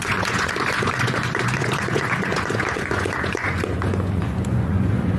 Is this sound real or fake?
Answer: fake